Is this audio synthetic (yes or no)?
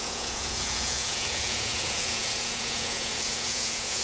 yes